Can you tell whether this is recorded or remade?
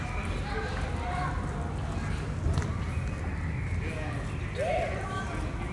recorded